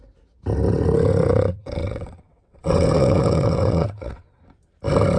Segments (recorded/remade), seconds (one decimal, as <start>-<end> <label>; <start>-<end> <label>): 0.0-1.3 recorded; 1.3-4.4 remade; 4.4-5.2 recorded